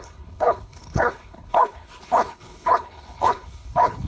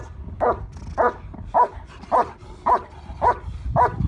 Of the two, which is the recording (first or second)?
second